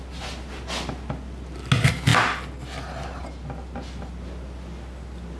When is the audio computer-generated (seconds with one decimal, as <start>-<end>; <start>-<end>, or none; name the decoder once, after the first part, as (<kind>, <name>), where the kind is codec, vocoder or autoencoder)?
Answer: none